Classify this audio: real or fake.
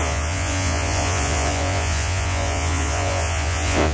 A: fake